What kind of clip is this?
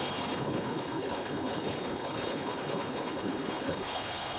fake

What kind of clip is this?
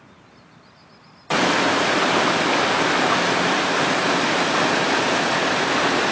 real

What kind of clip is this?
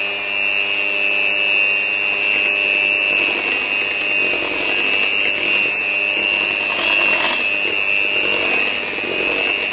real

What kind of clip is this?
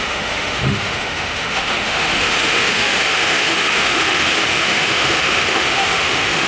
fake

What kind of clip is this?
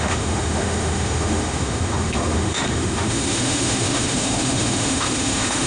fake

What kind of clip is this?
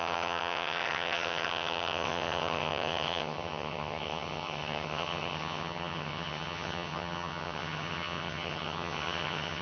fake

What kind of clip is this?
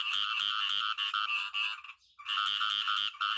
real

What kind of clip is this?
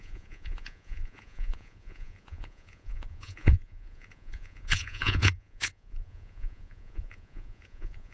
fake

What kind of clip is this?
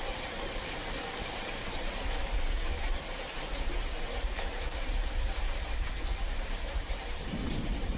fake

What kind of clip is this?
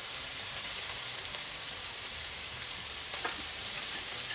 fake